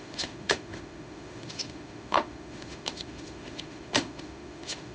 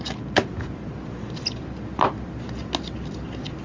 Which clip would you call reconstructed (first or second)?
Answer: first